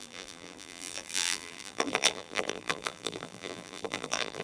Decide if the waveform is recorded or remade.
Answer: remade